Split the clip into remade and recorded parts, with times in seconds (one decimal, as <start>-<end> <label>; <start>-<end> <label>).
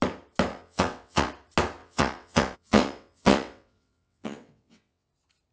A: 0.0-0.5 recorded; 0.5-1.3 remade; 1.3-1.8 recorded; 1.8-5.1 remade; 5.1-5.5 recorded